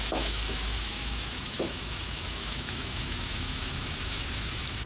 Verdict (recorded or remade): remade